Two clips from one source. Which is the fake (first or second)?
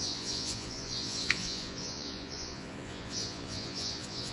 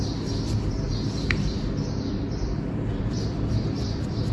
first